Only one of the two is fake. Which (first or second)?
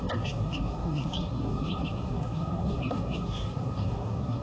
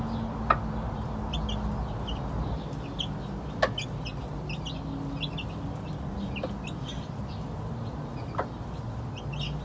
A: first